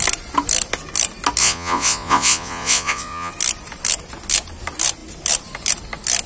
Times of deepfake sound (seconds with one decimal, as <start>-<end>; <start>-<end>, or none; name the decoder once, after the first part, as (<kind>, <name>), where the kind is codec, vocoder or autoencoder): 1.4-3.3 (vocoder, Vocos)

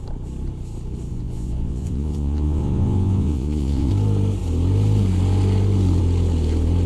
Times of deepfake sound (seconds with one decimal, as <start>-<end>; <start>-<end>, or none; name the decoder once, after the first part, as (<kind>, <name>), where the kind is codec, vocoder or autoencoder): 1.1-3.9 (vocoder, Vocos)

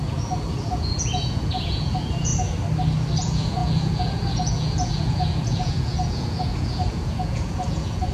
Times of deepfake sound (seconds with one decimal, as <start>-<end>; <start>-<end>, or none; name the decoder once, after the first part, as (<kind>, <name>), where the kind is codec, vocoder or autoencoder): 0.0-2.3 (vocoder, Vocos); 3.2-8.1